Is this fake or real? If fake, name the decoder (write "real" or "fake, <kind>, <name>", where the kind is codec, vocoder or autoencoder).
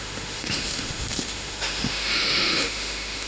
fake, autoencoder, DAC-VAE